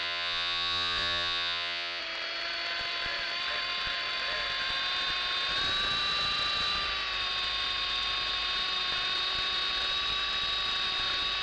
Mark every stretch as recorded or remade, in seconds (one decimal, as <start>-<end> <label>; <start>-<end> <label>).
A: 0.0-2.0 remade; 2.0-11.4 recorded